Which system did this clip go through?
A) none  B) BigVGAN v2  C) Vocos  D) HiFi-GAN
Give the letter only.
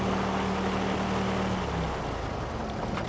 A